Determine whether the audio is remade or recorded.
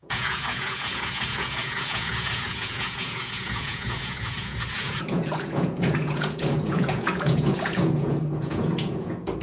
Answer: remade